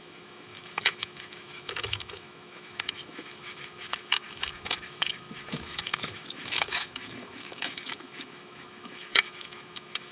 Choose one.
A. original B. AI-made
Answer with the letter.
B